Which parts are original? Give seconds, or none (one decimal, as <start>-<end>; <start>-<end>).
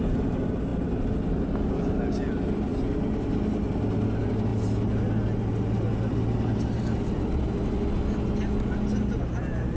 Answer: 0.0-9.8